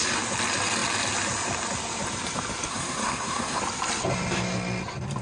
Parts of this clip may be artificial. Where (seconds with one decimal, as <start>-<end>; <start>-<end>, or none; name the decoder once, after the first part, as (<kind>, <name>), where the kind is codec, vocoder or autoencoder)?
2.7-3.6 (codec, SNAC)